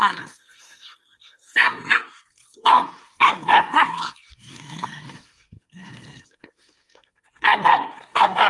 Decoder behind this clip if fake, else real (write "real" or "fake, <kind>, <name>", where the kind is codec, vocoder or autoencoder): fake, codec, SNAC